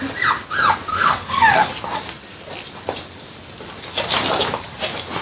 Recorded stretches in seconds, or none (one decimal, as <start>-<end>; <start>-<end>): 0.0-0.9; 1.7-5.2